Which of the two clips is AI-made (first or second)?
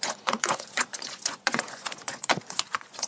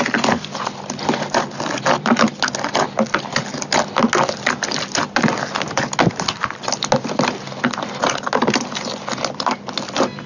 first